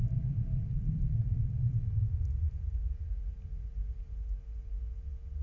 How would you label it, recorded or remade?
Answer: remade